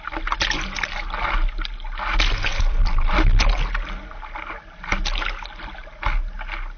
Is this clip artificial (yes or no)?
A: no